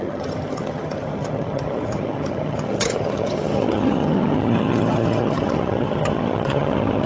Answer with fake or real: fake